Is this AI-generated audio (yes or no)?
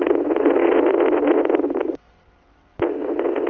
yes